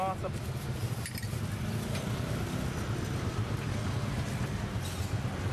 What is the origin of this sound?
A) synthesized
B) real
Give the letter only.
B